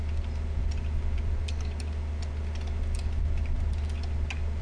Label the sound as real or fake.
real